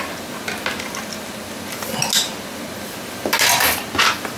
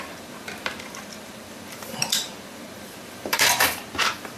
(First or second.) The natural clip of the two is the first